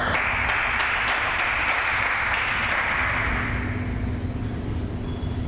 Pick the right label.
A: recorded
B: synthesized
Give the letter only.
A